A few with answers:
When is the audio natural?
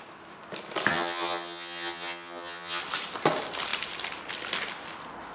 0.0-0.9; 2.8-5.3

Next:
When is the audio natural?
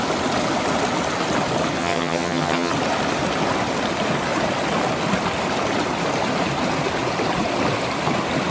0.0-1.8; 2.7-8.5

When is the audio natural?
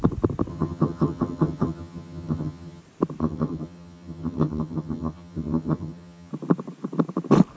0.0-0.5; 2.8-3.2; 6.3-7.6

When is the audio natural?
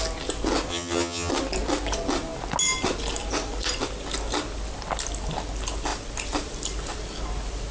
0.0-0.7; 1.3-7.7